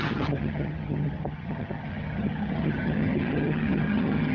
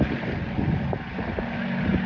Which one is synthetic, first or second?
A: first